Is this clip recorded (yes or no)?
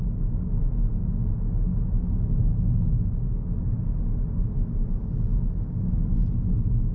yes